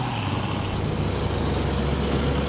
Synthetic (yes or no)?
no